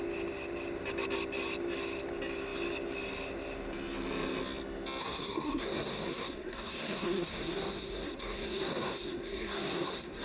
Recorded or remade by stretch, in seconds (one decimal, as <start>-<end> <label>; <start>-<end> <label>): 0.0-5.0 recorded; 5.0-10.2 remade